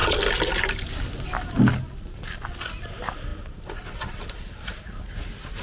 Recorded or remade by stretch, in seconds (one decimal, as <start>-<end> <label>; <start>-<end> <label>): 0.0-5.6 recorded